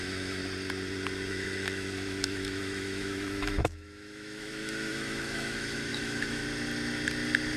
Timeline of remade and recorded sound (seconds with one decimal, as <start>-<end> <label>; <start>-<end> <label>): 0.0-0.4 remade; 0.4-1.3 recorded; 1.3-6.4 remade; 6.4-7.6 recorded